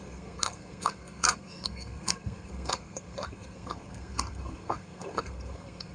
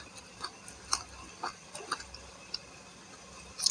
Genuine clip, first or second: second